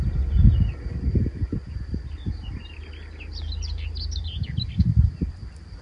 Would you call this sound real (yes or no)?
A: yes